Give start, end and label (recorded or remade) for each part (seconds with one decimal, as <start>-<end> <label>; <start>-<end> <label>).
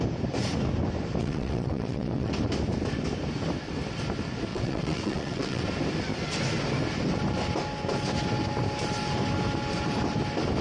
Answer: 0.0-1.2 recorded; 1.2-2.3 remade; 2.3-4.5 recorded; 4.5-5.6 remade; 5.6-10.6 recorded